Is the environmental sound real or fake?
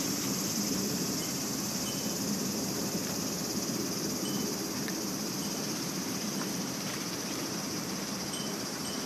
fake